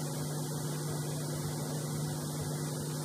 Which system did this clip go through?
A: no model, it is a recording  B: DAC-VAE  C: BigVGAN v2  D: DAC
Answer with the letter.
A